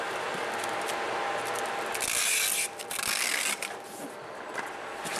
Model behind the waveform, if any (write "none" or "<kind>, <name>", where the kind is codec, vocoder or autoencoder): none